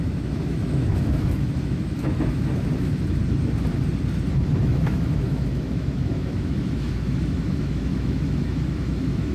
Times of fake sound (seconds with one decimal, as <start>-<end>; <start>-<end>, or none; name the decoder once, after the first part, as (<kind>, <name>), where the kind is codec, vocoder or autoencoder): 0.0-3.2 (autoencoder, DAC-VAE); 4.6-9.3